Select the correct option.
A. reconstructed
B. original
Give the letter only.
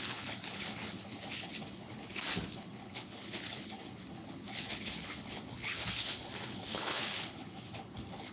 A